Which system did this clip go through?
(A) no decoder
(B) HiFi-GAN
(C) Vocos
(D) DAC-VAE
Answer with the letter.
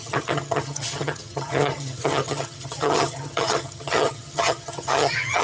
B